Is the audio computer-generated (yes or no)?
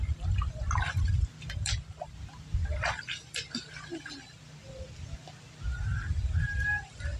no